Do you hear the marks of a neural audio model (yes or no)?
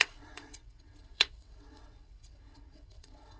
yes